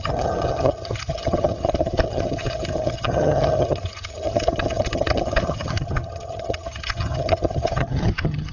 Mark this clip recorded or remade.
remade